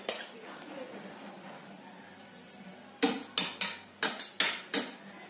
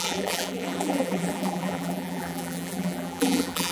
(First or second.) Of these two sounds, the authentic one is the first